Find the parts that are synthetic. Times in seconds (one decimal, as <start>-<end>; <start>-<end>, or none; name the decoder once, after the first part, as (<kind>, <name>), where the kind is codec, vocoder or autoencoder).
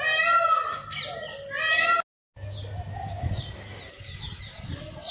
none